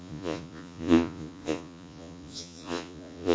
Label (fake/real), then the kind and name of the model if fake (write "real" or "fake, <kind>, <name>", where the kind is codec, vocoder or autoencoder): fake, vocoder, Vocos